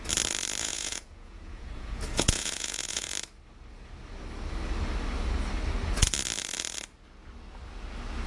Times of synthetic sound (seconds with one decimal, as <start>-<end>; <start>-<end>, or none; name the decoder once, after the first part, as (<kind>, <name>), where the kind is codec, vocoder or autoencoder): 0.6-3.1 (vocoder, Vocos)